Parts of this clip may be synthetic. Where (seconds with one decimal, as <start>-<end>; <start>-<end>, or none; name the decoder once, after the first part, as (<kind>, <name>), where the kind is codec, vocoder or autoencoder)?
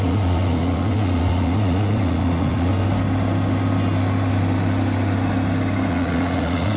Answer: 0.0-2.7 (vocoder, Vocos); 5.9-6.8